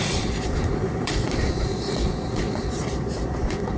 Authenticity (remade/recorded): remade